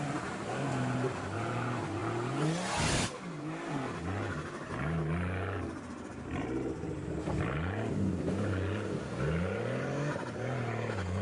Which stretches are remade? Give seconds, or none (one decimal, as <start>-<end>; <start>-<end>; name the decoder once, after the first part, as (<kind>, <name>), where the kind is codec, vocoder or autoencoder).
none